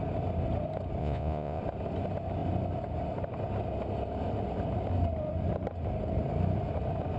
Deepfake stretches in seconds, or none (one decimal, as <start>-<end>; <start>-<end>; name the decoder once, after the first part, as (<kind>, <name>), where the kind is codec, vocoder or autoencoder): 1.0-1.6 (vocoder, Vocos)